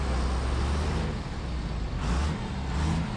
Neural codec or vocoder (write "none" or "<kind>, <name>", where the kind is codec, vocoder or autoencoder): none